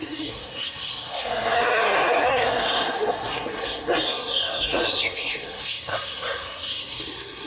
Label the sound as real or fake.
fake